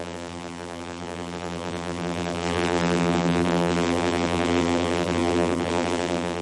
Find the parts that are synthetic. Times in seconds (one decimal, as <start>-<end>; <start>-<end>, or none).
0.0-6.4